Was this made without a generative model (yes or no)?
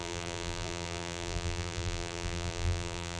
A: no